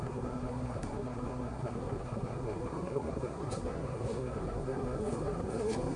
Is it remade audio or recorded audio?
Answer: remade